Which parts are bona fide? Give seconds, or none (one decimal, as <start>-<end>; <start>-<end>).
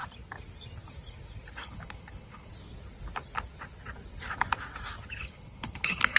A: 0.0-1.6; 2.5-5.2